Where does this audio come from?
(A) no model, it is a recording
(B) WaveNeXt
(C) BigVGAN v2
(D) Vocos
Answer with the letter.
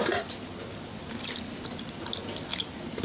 A